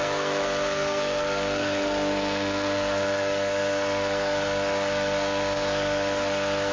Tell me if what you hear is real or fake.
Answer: fake